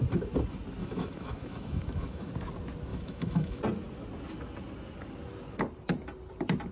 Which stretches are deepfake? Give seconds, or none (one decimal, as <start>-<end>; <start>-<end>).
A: 0.8-2.3; 2.9-3.6